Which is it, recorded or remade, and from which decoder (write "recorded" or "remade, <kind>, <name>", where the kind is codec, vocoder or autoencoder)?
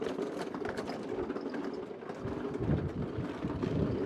recorded